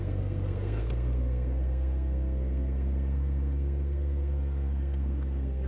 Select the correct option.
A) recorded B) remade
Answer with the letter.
B